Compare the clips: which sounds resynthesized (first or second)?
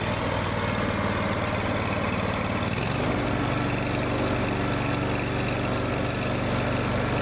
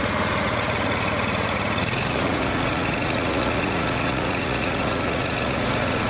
second